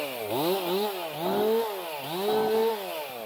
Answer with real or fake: real